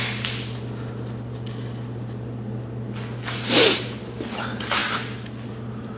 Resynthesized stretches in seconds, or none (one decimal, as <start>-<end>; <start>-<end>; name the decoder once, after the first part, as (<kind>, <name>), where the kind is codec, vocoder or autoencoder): none